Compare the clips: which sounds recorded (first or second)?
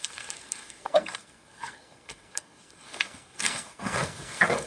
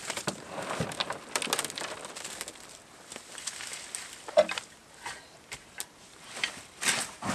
second